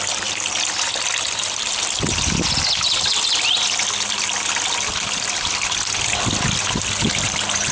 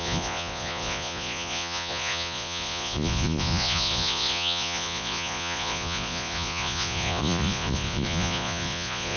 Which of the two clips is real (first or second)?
first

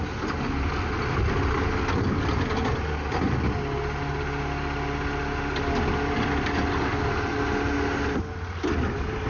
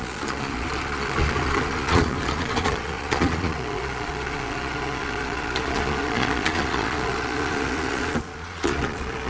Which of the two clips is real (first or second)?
first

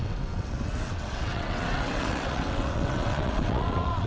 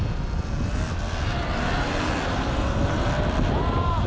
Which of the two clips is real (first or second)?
second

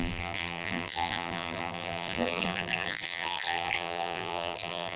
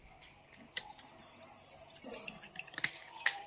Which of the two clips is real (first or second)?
second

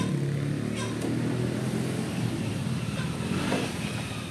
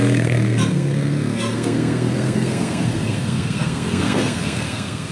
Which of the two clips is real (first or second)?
first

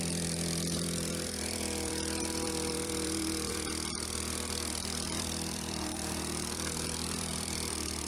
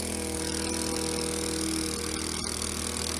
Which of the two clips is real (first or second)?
second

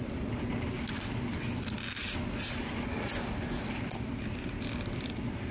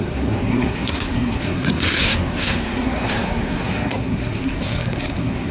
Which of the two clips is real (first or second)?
first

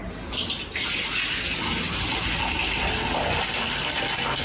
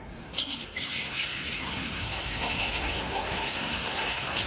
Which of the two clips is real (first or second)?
first